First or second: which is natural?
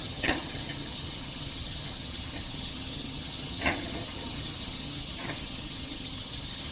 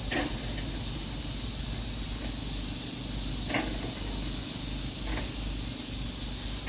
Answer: second